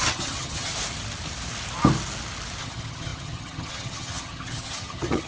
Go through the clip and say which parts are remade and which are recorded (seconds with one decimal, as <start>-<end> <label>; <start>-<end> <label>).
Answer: 0.0-0.7 remade; 0.7-2.6 recorded; 2.6-5.3 remade

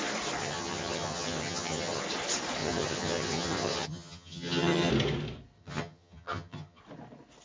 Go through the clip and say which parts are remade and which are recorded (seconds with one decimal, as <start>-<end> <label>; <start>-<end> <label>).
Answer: 0.0-0.4 recorded; 0.4-2.0 remade; 2.0-2.6 recorded; 2.6-4.9 remade; 4.9-5.6 recorded; 5.6-6.8 remade; 6.8-7.4 recorded

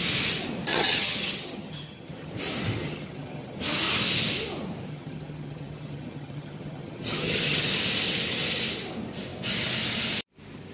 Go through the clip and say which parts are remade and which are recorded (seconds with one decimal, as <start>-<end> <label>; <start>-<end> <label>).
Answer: 0.0-0.7 recorded; 0.7-2.3 remade; 2.3-2.8 recorded; 2.8-3.6 remade; 3.6-4.9 recorded; 4.9-7.7 remade; 7.7-10.7 recorded

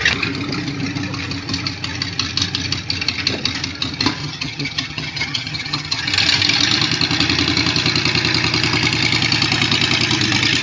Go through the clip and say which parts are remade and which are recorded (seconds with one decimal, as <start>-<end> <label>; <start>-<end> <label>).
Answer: 0.0-4.2 recorded; 4.2-6.0 remade; 6.0-10.6 recorded

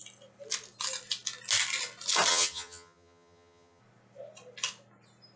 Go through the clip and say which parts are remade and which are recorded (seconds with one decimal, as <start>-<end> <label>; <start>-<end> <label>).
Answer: 0.0-2.3 recorded; 2.3-3.8 remade; 3.8-5.4 recorded